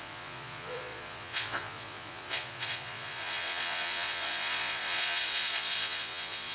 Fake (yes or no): yes